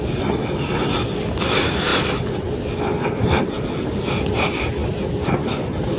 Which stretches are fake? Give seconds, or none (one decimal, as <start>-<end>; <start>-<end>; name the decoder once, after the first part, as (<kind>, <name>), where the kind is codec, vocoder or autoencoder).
none